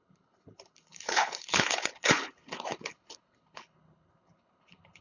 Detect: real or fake fake